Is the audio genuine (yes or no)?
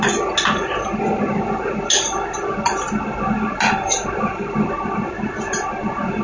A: yes